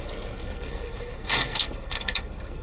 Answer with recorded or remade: remade